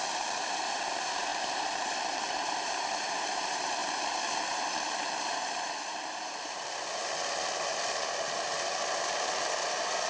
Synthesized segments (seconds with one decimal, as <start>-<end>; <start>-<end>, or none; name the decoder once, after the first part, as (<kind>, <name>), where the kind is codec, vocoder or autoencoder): 0.0-3.8 (vocoder, BigVGAN v2); 5.0-7.0